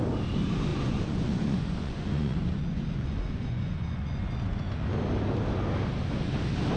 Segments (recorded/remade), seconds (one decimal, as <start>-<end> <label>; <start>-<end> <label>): 0.0-0.7 recorded; 0.7-4.8 remade; 4.8-6.8 recorded